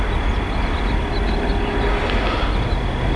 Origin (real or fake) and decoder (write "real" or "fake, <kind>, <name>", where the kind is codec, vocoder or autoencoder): real